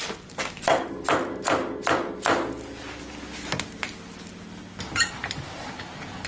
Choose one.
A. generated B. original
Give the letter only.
B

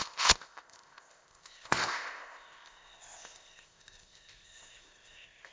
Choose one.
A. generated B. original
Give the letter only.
A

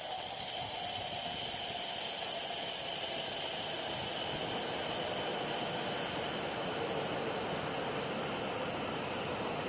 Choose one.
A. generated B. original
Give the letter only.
B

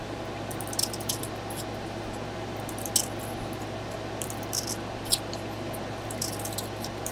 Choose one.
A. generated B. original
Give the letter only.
B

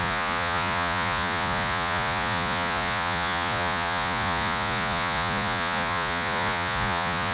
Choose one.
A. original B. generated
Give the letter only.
B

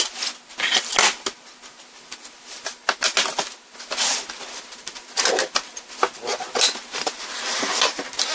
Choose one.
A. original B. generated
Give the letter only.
A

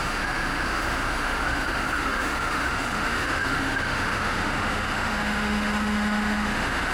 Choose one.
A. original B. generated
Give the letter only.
B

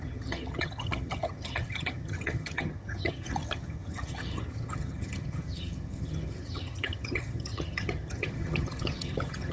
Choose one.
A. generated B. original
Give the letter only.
A